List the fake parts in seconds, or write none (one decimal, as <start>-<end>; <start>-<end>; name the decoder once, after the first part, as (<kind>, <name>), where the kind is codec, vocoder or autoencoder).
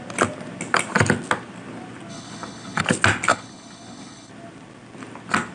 2.1-2.8 (codec, HILCodec); 3.3-4.3